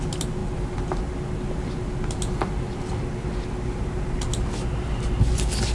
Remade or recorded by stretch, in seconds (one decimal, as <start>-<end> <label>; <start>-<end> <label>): 0.0-5.7 recorded